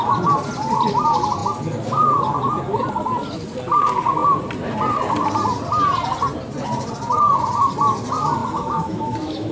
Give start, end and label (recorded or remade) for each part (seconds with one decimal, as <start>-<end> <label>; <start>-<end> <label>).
0.0-8.4 recorded; 8.4-9.5 remade